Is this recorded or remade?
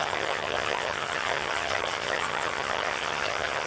remade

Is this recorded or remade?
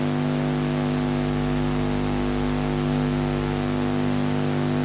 recorded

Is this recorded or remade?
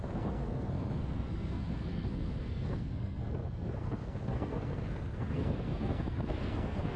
remade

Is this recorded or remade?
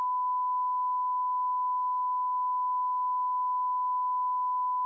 remade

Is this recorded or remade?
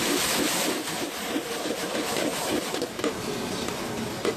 recorded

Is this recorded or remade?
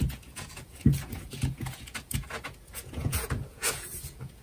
remade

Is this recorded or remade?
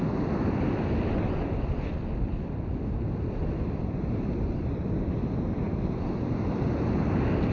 recorded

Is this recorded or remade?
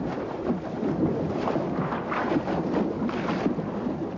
recorded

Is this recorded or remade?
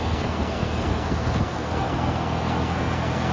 remade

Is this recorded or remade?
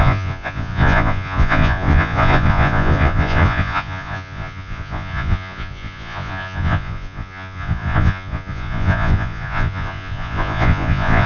remade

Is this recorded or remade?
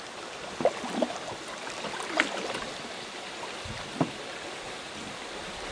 recorded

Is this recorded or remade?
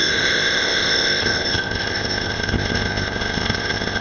remade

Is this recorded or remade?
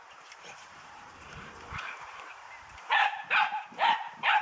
remade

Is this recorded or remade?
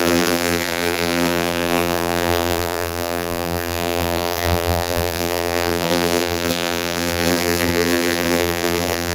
remade